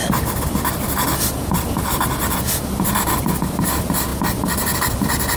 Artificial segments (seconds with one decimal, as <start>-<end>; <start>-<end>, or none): none